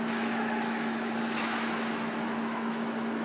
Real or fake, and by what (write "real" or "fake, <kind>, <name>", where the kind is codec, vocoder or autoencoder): fake, autoencoder, DAC-VAE